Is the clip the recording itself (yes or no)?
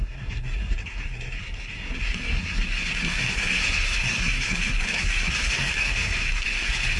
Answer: no